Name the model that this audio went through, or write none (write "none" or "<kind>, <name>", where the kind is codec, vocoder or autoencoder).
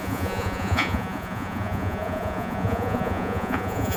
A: vocoder, Vocos